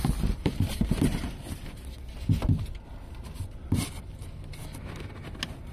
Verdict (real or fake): real